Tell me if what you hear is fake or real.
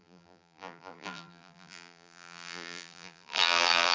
fake